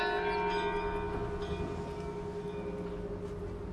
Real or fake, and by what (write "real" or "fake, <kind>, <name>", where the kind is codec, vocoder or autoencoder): real